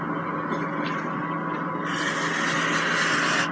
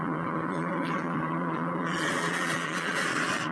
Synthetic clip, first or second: second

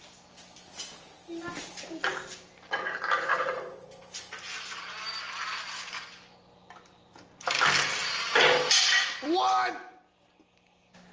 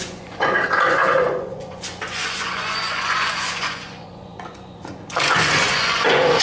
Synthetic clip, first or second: second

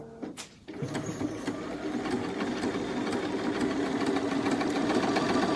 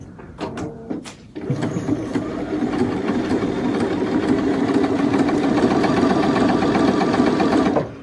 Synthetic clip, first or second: second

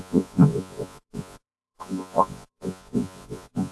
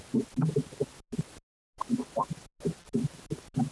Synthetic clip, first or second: first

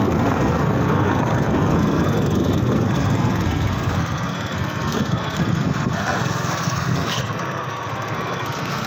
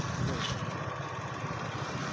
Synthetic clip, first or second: first